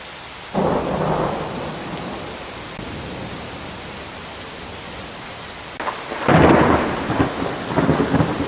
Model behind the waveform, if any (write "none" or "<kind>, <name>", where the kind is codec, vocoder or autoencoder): none